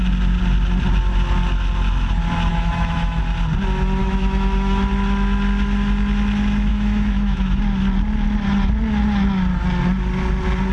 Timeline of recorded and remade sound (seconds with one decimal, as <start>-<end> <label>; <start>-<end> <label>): 0.0-2.5 recorded; 2.5-3.2 remade; 3.2-4.0 recorded; 4.0-4.8 remade; 4.8-6.7 recorded; 6.7-7.6 remade; 7.6-10.7 recorded